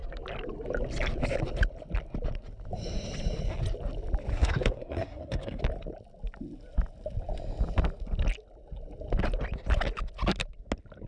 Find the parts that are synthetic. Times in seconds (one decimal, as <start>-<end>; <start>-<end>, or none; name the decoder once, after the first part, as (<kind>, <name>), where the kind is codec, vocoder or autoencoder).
4.3-5.6 (codec, SNAC)